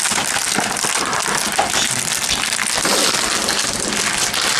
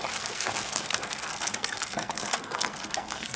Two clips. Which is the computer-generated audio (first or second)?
second